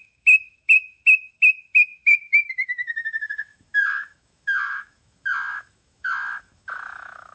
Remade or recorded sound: remade